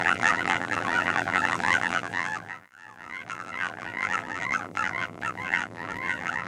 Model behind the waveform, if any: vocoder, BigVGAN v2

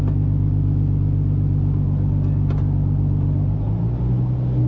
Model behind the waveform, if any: none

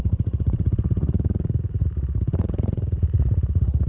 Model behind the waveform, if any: vocoder, Vocos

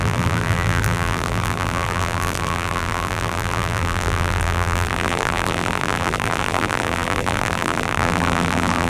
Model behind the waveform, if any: vocoder, BigVGAN v2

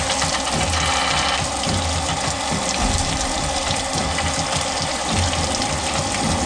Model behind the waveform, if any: none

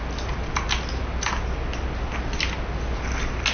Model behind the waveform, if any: none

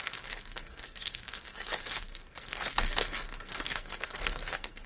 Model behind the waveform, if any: codec, SNAC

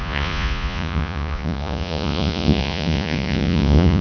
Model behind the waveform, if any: vocoder, Vocos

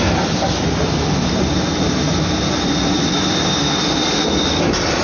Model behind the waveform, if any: none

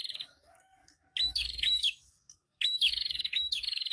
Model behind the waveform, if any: codec, DAC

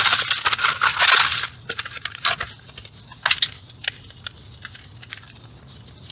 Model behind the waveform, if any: none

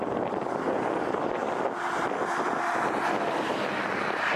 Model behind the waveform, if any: none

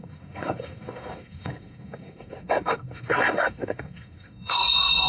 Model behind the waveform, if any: codec, SNAC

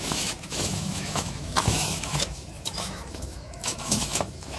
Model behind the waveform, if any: autoencoder, DAC-VAE